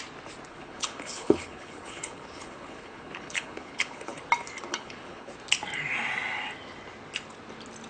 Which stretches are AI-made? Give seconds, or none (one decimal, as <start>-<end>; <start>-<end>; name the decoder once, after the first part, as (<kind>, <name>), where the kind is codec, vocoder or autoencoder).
0.5-4.2 (codec, HILCodec); 4.7-5.3